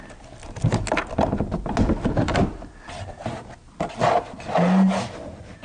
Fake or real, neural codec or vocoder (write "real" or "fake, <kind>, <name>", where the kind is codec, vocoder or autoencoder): real